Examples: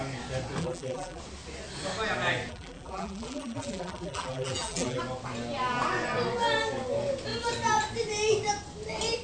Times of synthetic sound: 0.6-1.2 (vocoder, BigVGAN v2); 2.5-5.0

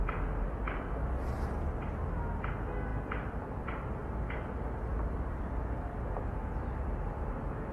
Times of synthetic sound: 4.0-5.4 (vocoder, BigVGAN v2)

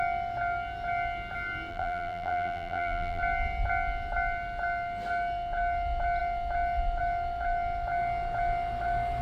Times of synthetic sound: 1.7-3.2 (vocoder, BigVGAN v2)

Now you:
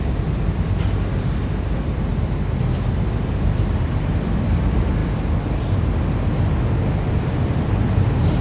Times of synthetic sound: 0.0-2.1 (vocoder, BigVGAN v2); 2.8-5.0; 7.1-8.4

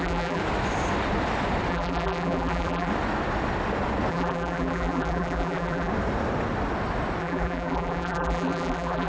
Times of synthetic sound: 0.0-0.4 (vocoder, BigVGAN v2); 1.7-2.9; 4.1-5.9; 7.2-9.1

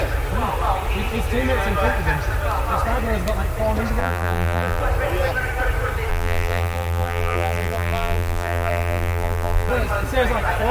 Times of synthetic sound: 4.0-4.8 (vocoder, BigVGAN v2); 6.1-9.7

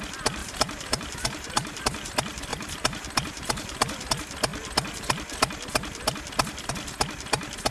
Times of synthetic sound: 0.4-1.8 (vocoder, BigVGAN v2); 2.5-4.1

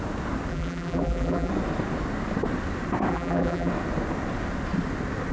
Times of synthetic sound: 0.5-1.5 (vocoder, BigVGAN v2); 3.1-3.7